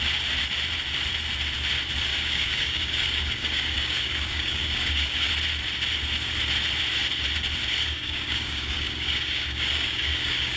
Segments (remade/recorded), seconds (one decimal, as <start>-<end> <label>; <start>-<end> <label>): 0.0-2.1 recorded; 2.1-5.3 remade; 5.3-7.8 recorded; 7.8-10.6 remade